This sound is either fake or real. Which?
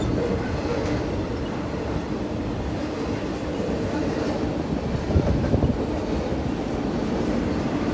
fake